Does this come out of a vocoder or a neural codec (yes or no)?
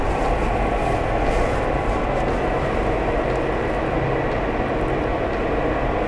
no